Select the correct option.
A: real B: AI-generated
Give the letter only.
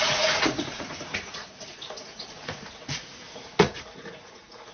B